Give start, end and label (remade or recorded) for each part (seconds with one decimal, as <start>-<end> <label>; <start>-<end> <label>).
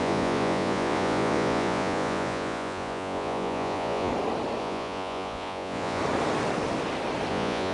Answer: 0.0-4.1 remade; 4.1-4.6 recorded; 4.6-6.0 remade; 6.0-7.3 recorded; 7.3-7.7 remade